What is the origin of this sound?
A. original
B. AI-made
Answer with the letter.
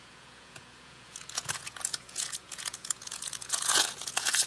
B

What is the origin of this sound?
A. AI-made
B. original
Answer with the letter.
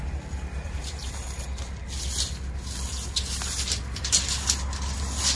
B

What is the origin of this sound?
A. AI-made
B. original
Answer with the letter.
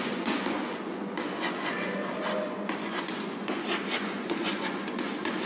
A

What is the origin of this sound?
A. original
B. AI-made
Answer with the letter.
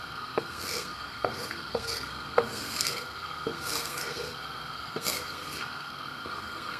B